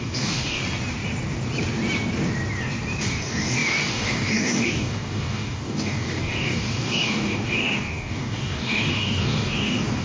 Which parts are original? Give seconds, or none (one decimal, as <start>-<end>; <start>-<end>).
0.6-3.0